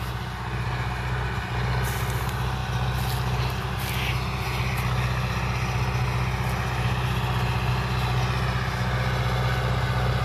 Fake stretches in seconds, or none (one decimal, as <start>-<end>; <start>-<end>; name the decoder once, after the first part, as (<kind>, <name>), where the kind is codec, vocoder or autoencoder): none